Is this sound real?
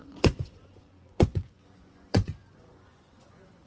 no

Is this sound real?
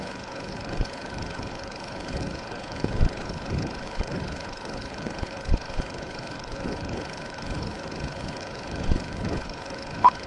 no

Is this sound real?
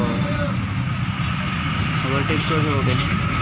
yes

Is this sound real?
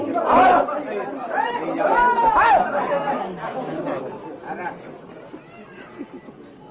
yes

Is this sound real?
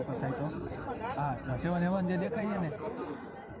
no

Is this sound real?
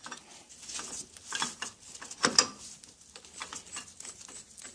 yes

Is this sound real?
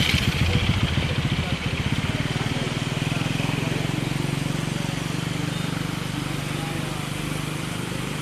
yes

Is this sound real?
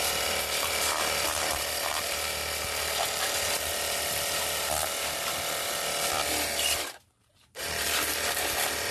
no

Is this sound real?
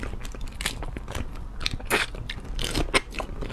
yes